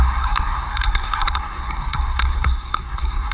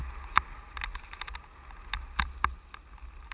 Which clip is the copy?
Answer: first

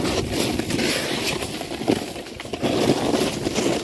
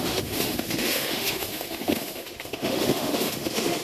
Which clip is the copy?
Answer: second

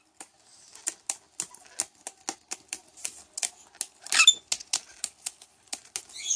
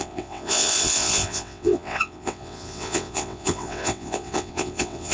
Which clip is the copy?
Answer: second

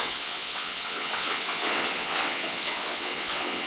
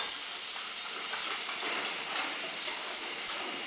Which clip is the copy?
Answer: first